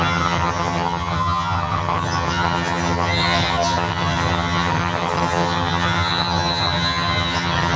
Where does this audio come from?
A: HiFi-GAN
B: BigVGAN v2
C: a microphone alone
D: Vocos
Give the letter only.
A